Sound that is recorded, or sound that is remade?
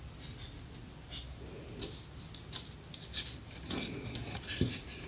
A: recorded